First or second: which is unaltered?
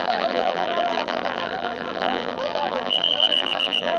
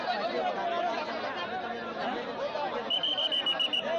second